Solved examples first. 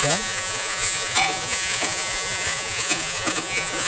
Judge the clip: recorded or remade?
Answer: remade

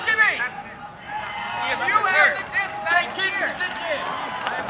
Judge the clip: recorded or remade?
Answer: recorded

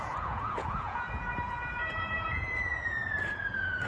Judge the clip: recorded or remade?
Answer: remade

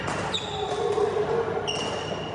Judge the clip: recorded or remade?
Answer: recorded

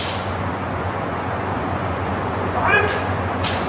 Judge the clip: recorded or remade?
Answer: remade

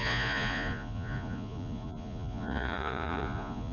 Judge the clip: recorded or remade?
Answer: remade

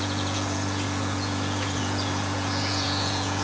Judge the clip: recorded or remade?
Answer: remade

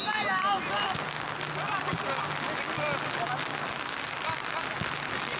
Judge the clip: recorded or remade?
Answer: recorded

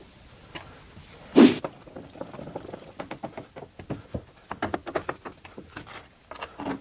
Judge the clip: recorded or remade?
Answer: recorded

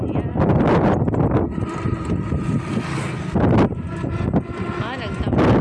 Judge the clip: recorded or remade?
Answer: recorded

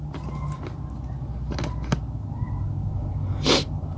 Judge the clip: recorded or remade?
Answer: recorded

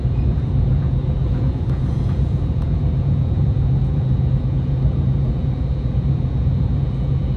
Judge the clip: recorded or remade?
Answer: remade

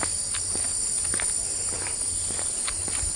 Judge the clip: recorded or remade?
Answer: recorded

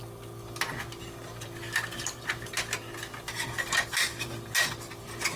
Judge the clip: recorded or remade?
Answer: recorded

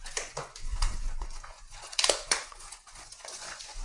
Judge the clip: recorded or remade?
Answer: remade